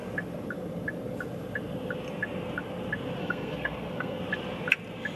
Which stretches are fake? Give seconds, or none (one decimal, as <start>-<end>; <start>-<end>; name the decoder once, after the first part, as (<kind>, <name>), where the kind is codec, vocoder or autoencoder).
3.2-4.2 (codec, SNAC)